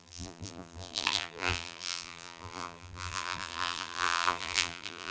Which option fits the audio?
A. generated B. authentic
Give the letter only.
A